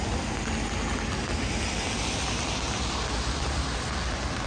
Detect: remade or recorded recorded